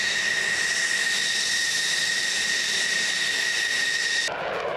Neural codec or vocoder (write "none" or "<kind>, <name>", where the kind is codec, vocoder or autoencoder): none